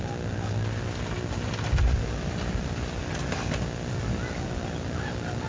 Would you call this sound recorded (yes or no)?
yes